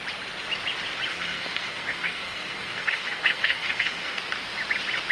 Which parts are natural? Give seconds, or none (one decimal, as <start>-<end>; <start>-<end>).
0.0-1.1; 4.2-5.1